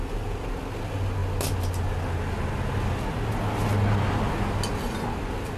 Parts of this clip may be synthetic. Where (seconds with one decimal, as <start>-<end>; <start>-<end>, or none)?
none